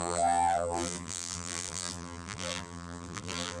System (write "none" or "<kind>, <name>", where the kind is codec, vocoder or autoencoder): vocoder, BigVGAN v2